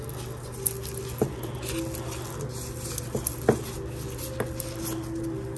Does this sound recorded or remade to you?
recorded